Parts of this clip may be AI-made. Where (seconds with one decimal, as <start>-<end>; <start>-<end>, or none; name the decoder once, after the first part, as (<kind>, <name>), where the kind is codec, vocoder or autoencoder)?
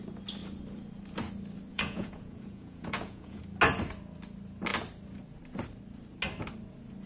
1.7-3.4 (vocoder, Vocos)